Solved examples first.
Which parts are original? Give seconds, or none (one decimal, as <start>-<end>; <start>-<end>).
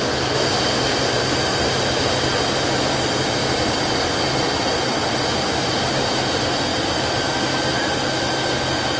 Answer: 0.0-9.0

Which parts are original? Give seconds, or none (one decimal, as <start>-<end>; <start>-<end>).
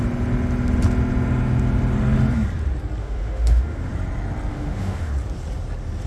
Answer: 0.0-3.0; 3.9-4.5; 5.1-6.1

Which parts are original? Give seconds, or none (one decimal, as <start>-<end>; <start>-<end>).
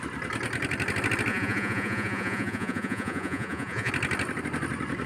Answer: 0.0-1.3; 3.9-5.1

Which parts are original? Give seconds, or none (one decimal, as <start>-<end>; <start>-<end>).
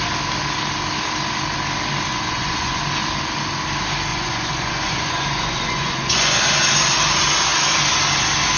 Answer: 0.0-2.1; 2.8-4.1; 6.4-8.6